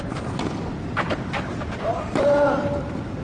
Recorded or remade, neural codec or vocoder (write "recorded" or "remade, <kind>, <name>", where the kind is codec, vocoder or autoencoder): remade, vocoder, BigVGAN v2